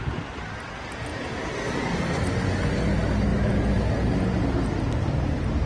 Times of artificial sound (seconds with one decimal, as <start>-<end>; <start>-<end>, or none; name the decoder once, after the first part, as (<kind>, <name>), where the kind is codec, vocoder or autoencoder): 1.1-2.2 (vocoder, BigVGAN v2); 3.3-4.1